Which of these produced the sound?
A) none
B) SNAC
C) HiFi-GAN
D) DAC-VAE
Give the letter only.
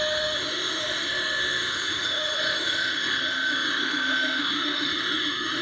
D